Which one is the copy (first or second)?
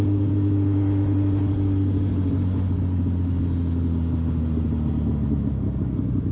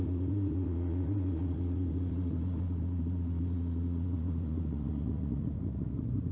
second